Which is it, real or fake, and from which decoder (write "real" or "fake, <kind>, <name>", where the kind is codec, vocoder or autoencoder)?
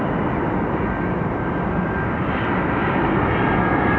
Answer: real